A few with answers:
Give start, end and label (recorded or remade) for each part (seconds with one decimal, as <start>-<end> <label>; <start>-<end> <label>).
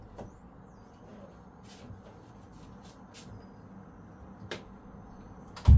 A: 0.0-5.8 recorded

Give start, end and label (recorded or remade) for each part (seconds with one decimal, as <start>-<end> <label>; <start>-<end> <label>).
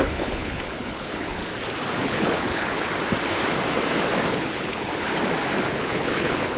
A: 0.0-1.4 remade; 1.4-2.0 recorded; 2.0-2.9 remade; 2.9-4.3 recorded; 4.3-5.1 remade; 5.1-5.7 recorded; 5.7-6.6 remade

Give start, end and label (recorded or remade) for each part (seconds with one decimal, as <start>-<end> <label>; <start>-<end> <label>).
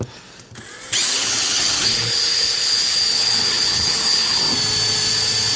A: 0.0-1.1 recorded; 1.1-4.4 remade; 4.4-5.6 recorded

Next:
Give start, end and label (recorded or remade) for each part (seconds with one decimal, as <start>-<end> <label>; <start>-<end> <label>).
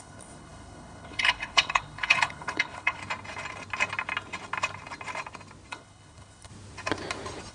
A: 0.0-3.0 remade; 3.0-5.7 recorded; 5.7-6.5 remade; 6.5-7.5 recorded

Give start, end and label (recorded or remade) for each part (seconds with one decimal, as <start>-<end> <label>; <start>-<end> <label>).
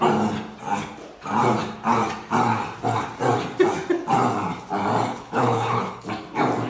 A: 0.0-5.1 recorded; 5.1-6.1 remade; 6.1-6.7 recorded